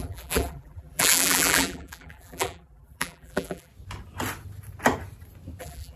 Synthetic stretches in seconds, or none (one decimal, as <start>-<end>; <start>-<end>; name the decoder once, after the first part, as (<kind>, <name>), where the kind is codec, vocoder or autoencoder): 0.0-3.7 (vocoder, BigVGAN v2); 5.6-6.0